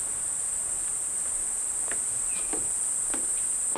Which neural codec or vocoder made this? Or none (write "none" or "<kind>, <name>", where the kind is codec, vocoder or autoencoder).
none